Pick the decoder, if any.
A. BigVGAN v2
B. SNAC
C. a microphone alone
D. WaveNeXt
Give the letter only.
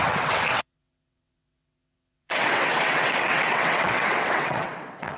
D